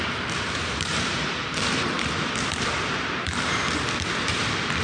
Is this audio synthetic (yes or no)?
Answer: yes